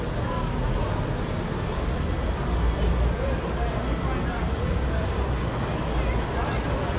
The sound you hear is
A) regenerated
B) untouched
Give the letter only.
B